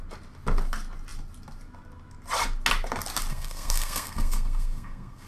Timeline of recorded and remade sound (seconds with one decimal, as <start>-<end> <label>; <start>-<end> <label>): 0.0-3.3 recorded; 3.3-5.3 remade